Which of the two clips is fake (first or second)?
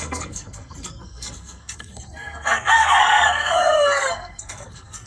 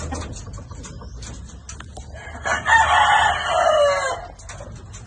first